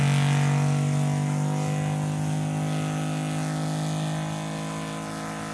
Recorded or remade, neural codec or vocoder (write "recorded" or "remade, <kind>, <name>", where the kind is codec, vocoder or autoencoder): recorded